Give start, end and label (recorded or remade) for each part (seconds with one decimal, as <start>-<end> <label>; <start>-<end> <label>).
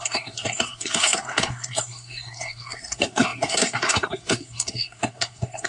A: 0.0-5.7 remade